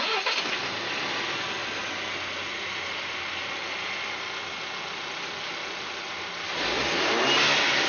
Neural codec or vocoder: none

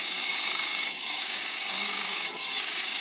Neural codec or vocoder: codec, DAC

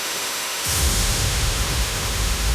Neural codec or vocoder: autoencoder, DAC-VAE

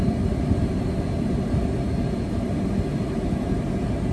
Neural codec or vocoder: none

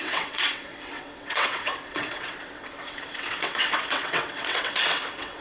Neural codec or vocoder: vocoder, WaveNeXt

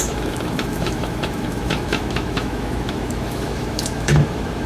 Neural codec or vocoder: autoencoder, DAC-VAE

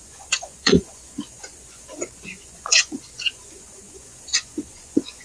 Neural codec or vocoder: vocoder, Vocos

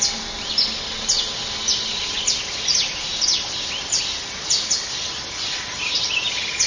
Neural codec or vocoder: none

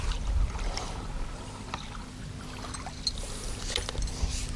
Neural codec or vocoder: none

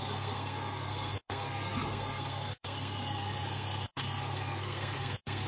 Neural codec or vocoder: codec, SNAC